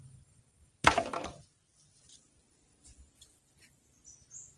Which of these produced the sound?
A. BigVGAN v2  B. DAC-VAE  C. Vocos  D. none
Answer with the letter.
D